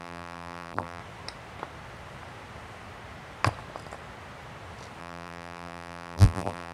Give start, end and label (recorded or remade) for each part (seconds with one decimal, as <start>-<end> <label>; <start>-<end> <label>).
0.0-1.0 remade; 1.0-5.0 recorded; 5.0-6.7 remade